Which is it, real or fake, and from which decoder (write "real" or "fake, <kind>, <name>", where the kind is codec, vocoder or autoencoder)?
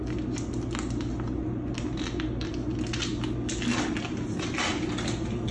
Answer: real